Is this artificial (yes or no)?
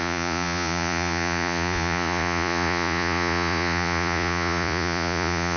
yes